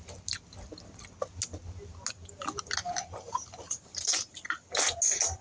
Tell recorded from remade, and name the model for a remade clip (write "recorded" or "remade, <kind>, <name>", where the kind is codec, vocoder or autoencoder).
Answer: recorded